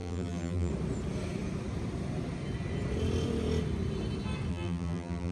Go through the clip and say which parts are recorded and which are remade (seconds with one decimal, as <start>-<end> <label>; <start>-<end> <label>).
0.0-0.7 remade; 0.7-4.5 recorded; 4.5-5.3 remade